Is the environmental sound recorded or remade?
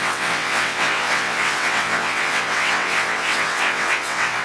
remade